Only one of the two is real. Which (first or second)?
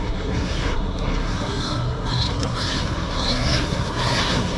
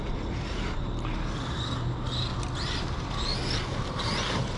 second